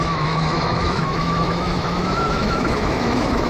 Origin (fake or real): fake